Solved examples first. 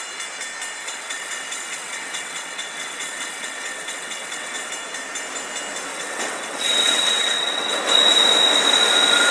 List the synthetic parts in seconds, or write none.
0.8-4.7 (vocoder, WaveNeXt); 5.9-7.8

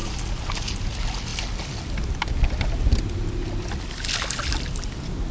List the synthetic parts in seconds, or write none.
none

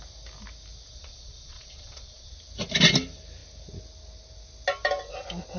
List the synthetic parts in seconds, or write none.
0.9-2.3 (vocoder, Vocos)